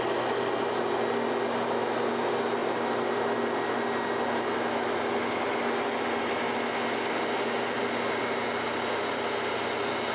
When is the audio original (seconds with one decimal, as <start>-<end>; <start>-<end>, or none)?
0.0-10.1